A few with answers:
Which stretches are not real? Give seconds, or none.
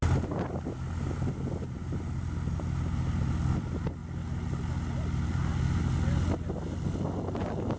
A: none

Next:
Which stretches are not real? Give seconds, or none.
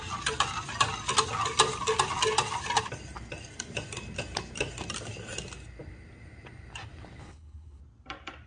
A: 7.2-7.8 (codec, HILCodec)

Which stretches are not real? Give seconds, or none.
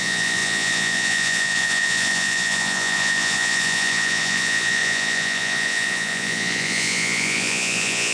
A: 0.0-8.1 (vocoder, Vocos)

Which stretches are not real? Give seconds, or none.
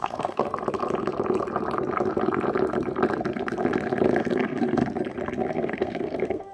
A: 0.0-0.4 (codec, SNAC); 4.2-4.8; 5.5-6.5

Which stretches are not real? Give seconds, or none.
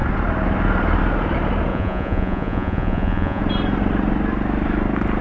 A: 1.7-3.4 (vocoder, Vocos)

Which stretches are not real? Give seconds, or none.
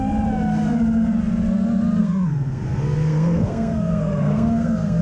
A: 2.0-5.0 (codec, SNAC)